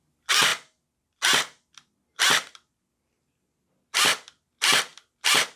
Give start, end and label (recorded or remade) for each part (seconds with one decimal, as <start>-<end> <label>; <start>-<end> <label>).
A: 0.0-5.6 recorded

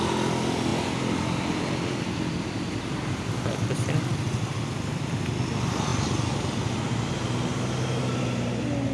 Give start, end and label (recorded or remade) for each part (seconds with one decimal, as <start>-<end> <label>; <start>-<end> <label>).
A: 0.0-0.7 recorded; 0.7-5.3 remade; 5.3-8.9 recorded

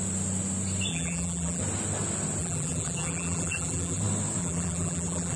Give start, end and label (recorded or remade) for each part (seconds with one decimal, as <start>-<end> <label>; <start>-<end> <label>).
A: 0.0-0.9 recorded; 0.9-1.6 remade; 1.6-2.4 recorded; 2.4-4.0 remade; 4.0-4.4 recorded; 4.4-5.4 remade